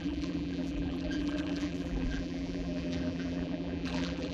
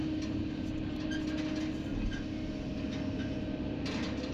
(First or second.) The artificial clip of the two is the first